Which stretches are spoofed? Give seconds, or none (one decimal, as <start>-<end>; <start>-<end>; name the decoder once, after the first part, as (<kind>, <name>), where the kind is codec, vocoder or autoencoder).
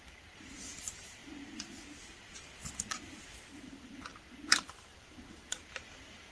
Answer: 0.0-1.2 (vocoder, BigVGAN v2); 3.5-4.1; 4.8-6.3